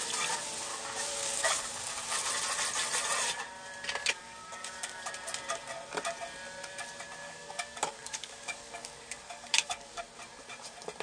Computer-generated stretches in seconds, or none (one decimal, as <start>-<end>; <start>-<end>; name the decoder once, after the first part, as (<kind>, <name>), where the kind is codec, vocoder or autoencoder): 0.7-1.9 (codec, DAC); 4.0-5.1; 7.2-10.0